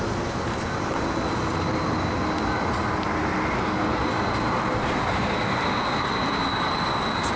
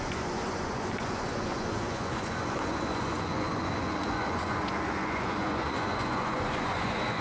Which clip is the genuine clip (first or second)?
first